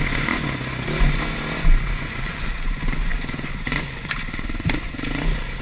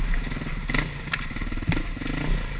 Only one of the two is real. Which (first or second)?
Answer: second